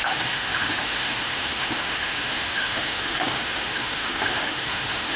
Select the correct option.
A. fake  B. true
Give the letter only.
A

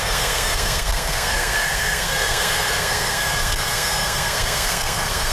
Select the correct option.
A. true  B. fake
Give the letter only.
B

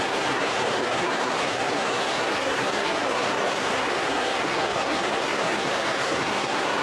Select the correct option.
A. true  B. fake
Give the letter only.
B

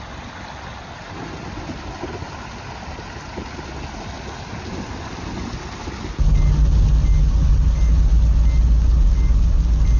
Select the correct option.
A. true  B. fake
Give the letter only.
A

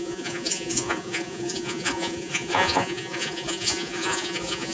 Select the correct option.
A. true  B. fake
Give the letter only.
B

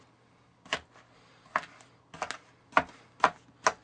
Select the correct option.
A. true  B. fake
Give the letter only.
A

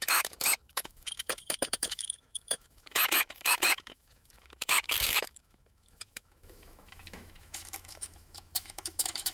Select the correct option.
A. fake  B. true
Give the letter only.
A